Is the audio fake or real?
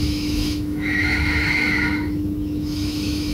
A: fake